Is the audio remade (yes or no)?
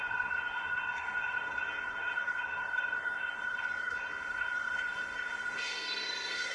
yes